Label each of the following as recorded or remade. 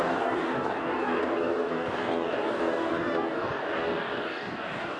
remade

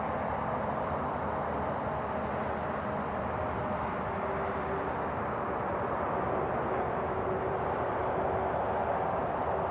recorded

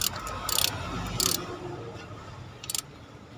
recorded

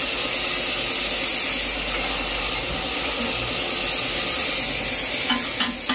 recorded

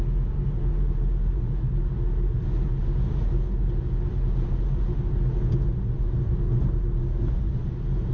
recorded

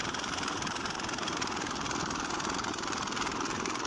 remade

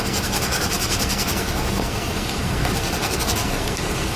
remade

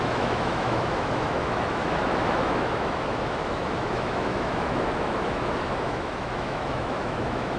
remade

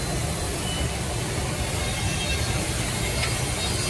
recorded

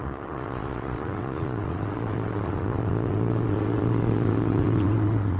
remade